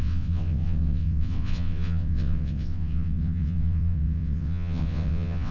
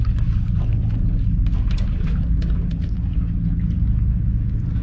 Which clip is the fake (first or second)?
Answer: first